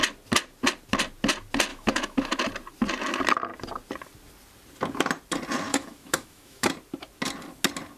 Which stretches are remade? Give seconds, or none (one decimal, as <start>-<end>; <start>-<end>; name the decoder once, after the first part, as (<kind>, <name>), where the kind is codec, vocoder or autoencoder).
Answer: 1.7-2.3 (autoencoder, DAC-VAE); 5.7-6.7